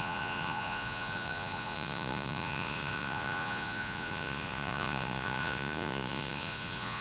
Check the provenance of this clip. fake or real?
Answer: fake